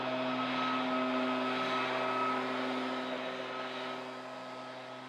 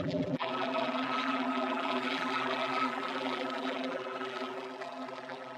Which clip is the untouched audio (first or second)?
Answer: first